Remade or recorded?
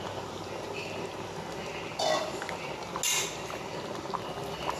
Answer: recorded